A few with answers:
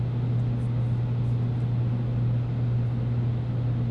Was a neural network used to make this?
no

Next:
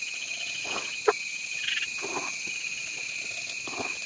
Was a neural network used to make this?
no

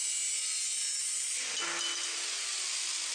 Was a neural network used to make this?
no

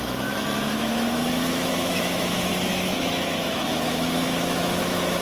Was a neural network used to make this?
yes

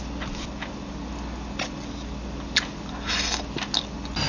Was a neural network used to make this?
no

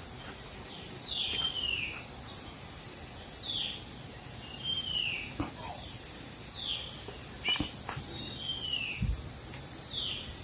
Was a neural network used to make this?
no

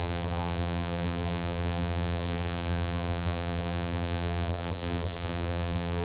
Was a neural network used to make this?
yes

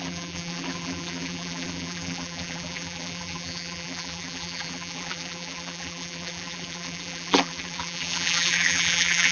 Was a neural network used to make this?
yes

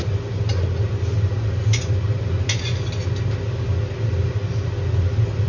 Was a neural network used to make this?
no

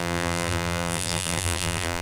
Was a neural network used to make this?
yes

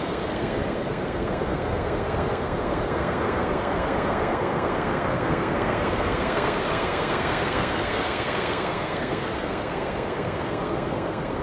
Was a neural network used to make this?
yes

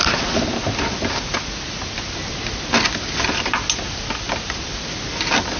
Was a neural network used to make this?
no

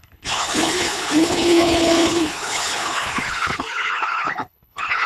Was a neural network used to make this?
yes